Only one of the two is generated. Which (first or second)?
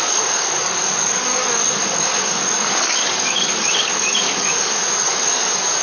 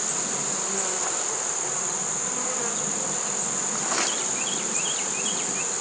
first